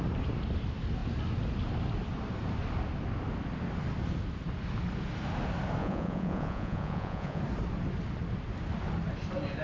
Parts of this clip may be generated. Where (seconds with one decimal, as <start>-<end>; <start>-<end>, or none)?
5.8-7.4